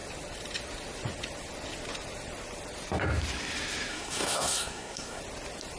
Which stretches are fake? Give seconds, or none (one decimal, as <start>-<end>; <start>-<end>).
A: 3.9-5.2